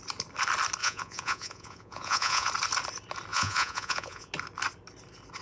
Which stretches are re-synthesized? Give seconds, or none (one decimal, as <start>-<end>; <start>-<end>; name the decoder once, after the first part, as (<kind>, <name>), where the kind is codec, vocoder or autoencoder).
0.8-2.5 (vocoder, Vocos); 3.3-4.3

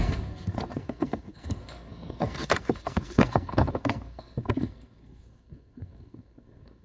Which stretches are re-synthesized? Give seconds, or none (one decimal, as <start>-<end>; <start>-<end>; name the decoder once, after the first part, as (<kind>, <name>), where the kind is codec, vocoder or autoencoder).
0.0-6.8 (codec, SNAC)

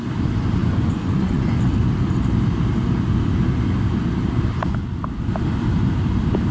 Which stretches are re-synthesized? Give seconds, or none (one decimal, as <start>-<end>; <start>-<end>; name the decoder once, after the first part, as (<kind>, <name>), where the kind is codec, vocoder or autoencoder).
0.6-1.5 (vocoder, Vocos)

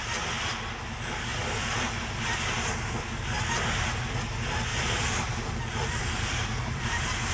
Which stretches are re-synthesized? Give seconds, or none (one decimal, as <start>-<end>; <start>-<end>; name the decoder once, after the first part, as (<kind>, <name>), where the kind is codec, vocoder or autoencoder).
4.7-7.3 (vocoder, BigVGAN v2)